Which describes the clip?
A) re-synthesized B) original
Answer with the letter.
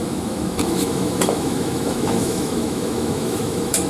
A